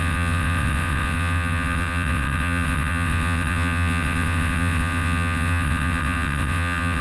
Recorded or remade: remade